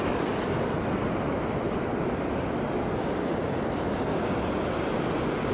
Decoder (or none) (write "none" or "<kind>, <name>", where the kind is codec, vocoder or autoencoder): none